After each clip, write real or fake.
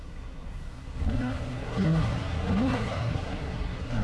fake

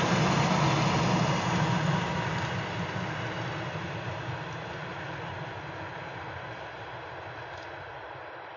real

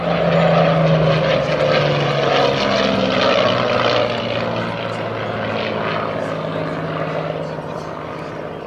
real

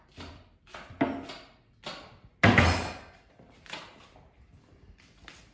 real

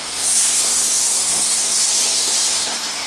fake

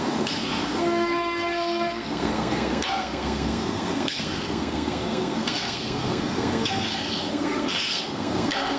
fake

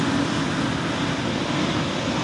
real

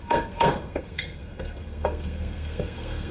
fake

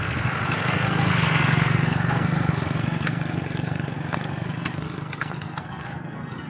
fake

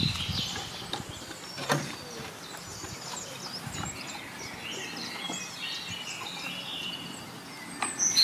real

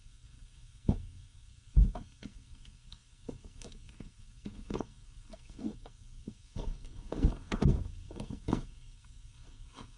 fake